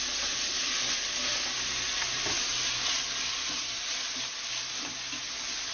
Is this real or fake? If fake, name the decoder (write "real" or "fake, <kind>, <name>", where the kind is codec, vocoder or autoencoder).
real